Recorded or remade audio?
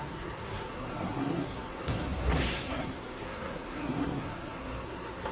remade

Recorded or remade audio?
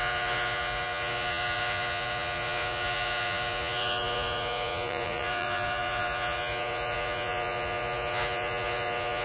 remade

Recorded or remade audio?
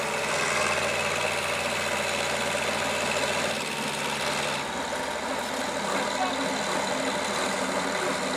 recorded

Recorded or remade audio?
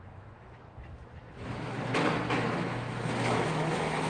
remade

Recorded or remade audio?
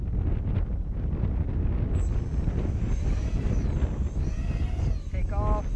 recorded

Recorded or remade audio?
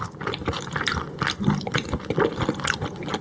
remade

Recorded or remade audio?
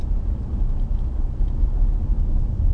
remade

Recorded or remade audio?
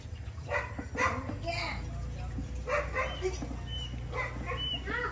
recorded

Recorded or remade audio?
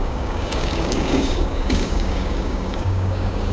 remade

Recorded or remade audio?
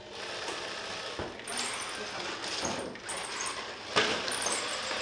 recorded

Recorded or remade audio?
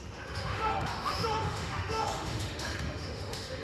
remade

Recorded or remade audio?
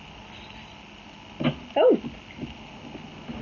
recorded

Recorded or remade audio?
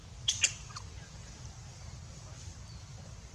recorded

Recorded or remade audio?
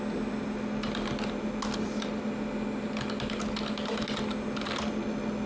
recorded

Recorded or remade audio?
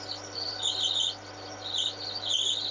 recorded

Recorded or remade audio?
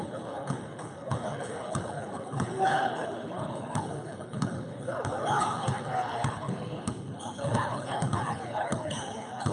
remade